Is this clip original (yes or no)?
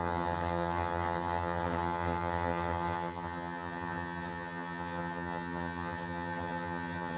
no